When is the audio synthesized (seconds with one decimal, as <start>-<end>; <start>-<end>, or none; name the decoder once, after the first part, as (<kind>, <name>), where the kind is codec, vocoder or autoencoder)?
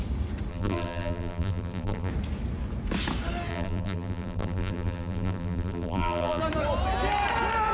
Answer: 0.5-2.1 (vocoder, BigVGAN v2); 3.5-6.4